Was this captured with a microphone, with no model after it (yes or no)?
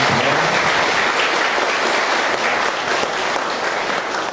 yes